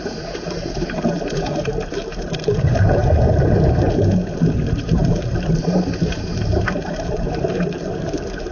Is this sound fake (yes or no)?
yes